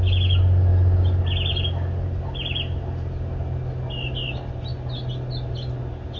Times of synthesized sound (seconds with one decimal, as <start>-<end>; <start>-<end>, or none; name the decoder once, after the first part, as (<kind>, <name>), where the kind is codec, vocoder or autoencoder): none

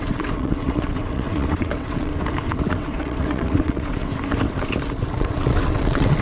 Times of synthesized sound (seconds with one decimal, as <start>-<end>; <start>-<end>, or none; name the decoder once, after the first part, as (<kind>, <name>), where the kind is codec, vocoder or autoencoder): 0.0-2.1 (vocoder, WaveNeXt); 2.7-4.1; 5.0-6.2